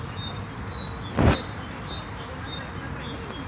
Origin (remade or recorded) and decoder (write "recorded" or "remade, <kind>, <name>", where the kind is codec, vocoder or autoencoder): recorded